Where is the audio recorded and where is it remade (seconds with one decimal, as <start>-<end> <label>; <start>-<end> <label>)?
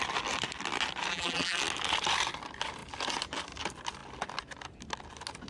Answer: 0.0-1.1 recorded; 1.1-1.6 remade; 1.6-5.5 recorded